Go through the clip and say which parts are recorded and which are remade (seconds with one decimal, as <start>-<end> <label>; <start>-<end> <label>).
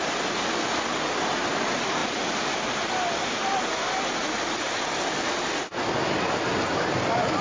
0.0-7.4 recorded